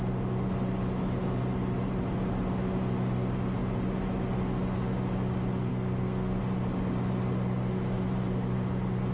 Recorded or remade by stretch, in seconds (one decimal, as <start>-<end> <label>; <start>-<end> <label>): 0.0-5.7 recorded; 5.7-6.4 remade; 6.4-9.1 recorded